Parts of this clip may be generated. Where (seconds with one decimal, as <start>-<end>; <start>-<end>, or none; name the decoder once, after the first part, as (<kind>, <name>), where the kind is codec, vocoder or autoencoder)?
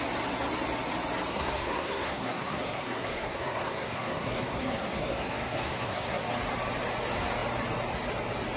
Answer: 1.3-6.2 (codec, SNAC)